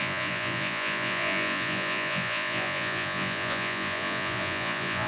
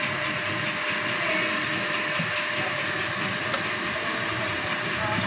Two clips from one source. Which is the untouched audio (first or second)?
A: second